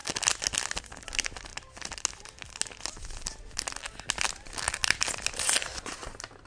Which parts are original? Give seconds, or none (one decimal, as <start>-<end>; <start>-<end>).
0.0-6.5

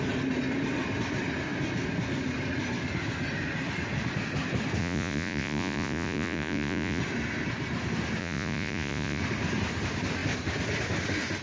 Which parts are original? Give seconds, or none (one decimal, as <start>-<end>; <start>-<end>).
0.0-4.8; 7.0-8.2; 9.2-11.4

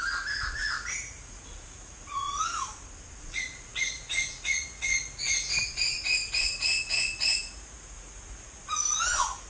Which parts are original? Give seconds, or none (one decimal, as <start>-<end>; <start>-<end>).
2.6-3.2

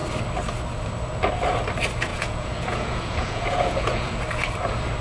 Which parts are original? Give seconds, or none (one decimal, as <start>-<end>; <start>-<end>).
0.0-2.1; 4.2-5.0

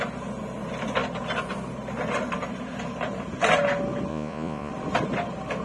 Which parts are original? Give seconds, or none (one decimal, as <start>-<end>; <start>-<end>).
0.0-4.1; 4.7-5.6

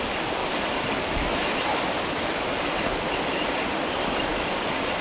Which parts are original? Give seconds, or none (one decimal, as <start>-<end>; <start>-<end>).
0.0-5.0